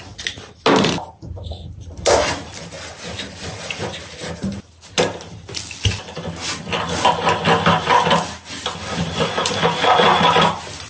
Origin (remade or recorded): recorded